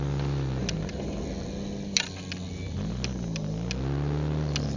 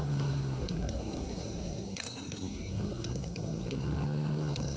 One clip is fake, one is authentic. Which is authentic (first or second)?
first